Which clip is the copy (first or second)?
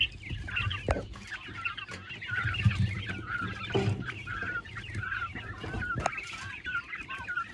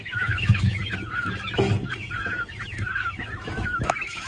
second